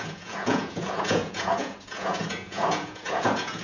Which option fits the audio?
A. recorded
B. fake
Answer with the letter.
B